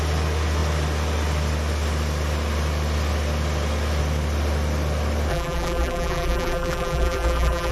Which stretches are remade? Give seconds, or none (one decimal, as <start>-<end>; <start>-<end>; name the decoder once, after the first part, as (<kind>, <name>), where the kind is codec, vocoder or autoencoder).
5.3-7.7 (vocoder, BigVGAN v2)